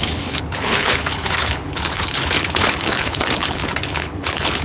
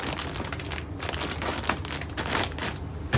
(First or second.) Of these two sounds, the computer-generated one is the first